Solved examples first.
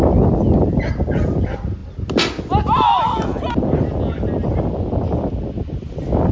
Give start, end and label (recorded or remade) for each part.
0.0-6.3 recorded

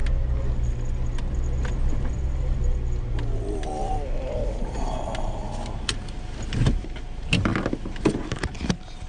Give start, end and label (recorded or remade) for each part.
0.0-9.1 recorded

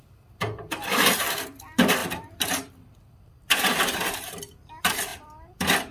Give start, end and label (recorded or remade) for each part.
0.0-5.9 remade

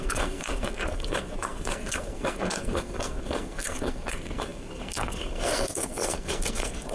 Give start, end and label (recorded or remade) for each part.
0.0-6.9 remade

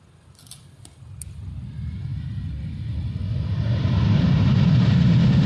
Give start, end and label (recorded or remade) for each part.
0.0-5.5 recorded